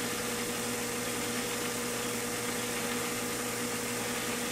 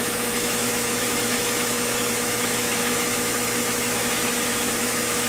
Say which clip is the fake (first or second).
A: second